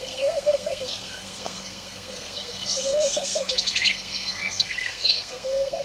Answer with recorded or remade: remade